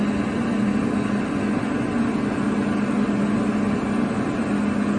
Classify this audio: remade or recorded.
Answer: recorded